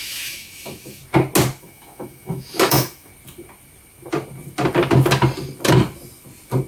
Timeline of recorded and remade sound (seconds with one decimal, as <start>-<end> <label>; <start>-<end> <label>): 0.0-1.0 remade; 1.0-1.6 recorded; 1.6-3.1 remade; 3.1-6.7 recorded